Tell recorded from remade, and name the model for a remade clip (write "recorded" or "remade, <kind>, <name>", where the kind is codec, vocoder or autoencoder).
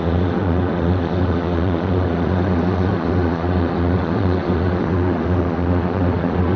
remade, vocoder, Vocos